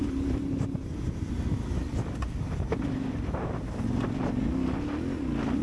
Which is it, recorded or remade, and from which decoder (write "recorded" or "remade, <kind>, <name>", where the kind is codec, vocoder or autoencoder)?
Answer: recorded